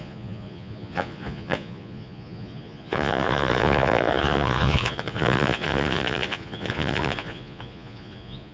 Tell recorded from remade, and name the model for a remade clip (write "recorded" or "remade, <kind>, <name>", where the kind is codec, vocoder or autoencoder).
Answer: remade, vocoder, Vocos